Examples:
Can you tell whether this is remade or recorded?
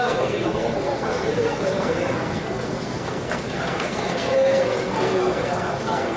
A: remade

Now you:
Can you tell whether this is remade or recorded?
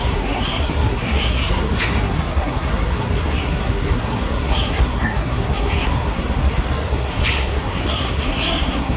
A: remade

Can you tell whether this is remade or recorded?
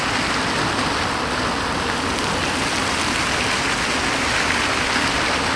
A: recorded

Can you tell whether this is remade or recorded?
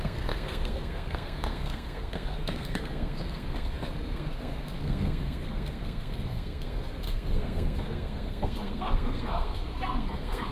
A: remade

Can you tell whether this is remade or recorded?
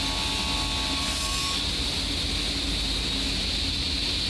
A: recorded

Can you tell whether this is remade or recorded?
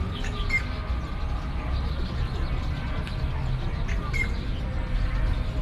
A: recorded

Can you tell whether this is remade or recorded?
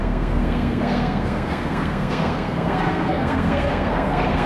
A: remade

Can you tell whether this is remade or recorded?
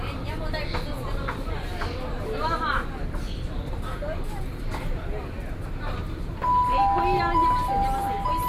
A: recorded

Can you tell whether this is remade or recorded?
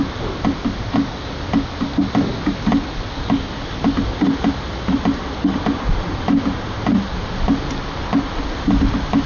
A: recorded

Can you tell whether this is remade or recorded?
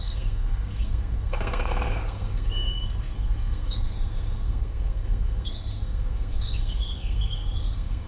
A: remade